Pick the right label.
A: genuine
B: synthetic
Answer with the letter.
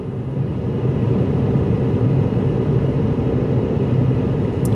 A